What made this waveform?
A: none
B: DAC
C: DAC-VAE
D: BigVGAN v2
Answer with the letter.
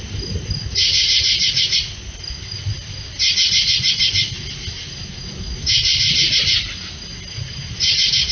A